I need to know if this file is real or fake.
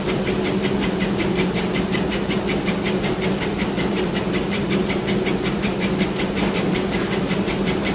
real